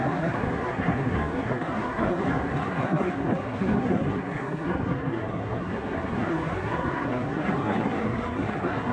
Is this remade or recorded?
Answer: remade